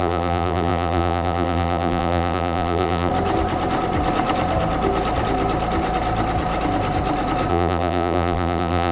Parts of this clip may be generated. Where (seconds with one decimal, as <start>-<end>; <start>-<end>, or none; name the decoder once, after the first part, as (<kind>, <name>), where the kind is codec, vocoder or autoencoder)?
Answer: 0.0-3.1 (vocoder, BigVGAN v2); 7.5-8.9